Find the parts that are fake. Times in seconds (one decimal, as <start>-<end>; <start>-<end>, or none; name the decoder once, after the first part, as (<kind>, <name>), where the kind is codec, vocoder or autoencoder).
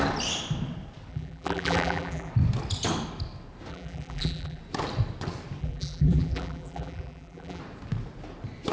1.1-2.3 (vocoder, BigVGAN v2); 3.7-4.6; 5.6-7.6